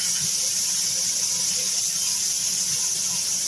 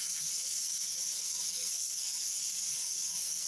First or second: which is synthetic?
second